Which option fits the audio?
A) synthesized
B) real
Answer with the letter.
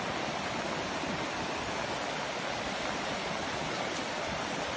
B